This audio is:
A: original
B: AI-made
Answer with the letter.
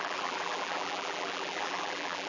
B